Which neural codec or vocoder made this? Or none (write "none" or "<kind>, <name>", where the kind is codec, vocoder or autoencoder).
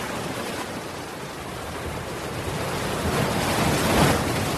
none